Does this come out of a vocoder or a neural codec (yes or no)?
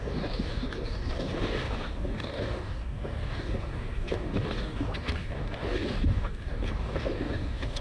yes